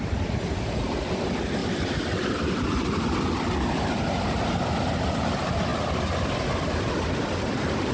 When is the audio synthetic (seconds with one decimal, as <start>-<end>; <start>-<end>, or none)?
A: none